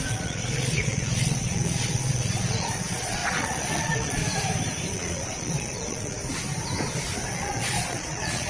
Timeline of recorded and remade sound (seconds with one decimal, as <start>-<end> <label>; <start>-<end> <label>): 0.0-4.2 remade; 4.2-4.9 recorded; 4.9-6.2 remade; 6.2-7.3 recorded; 7.3-8.5 remade